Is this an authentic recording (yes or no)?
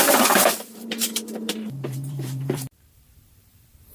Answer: no